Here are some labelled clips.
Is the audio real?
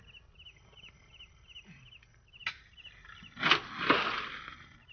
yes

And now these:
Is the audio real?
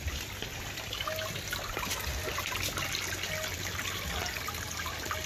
yes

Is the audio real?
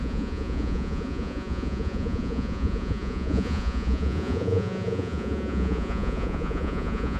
no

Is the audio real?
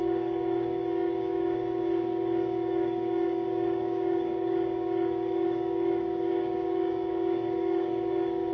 no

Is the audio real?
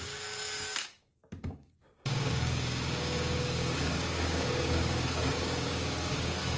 no